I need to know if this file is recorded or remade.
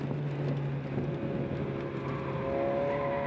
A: recorded